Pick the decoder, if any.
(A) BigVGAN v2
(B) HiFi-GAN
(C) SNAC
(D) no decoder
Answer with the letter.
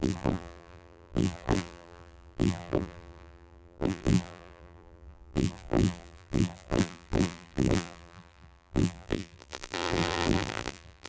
A